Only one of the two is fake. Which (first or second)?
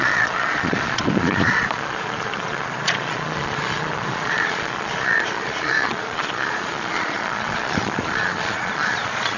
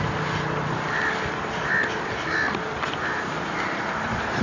first